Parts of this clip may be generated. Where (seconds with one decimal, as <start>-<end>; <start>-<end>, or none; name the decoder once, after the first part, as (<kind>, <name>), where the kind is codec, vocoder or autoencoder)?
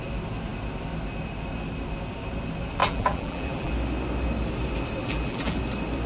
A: 2.8-3.7 (vocoder, BigVGAN v2); 5.0-5.6